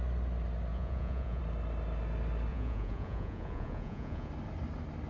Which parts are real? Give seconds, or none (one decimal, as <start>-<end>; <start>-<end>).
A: 0.0-0.7; 1.4-2.5; 4.3-5.1